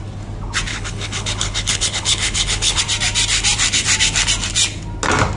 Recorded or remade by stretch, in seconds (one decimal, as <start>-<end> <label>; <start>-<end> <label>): 0.0-0.7 recorded; 0.7-2.8 remade; 2.8-5.4 recorded